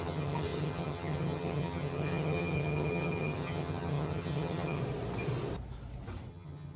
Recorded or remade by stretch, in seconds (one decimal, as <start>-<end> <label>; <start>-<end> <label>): 0.0-4.8 remade; 4.8-6.3 recorded; 6.3-6.8 remade